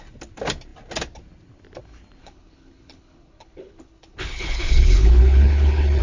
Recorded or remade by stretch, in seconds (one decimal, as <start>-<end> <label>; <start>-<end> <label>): 0.0-2.2 recorded; 2.2-6.0 remade